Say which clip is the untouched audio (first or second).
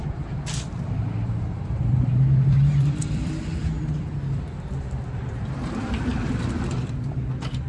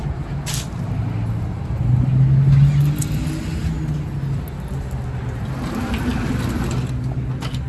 second